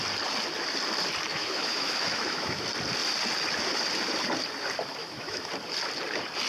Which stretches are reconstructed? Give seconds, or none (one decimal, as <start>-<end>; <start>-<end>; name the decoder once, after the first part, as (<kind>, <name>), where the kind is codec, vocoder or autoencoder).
1.3-2.6 (autoencoder, DAC-VAE); 5.0-5.5